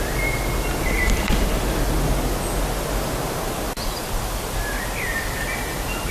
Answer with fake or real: real